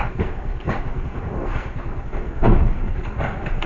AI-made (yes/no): yes